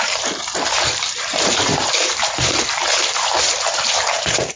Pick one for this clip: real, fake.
fake